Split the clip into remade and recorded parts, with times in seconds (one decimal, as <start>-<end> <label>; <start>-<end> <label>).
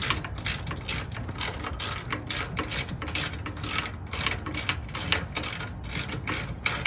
0.0-6.9 recorded